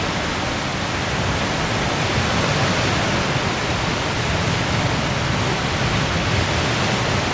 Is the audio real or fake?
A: real